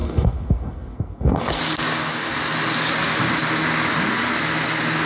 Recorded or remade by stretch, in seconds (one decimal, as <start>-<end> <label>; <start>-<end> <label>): 0.0-1.6 remade; 1.6-5.1 recorded

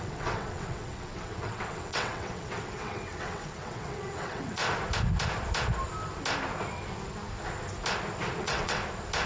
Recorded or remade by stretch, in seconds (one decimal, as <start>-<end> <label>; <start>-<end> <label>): 0.0-4.6 remade; 4.6-8.4 recorded; 8.4-8.8 remade; 8.8-9.3 recorded